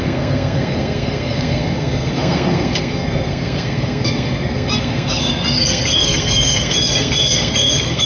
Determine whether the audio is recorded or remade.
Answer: remade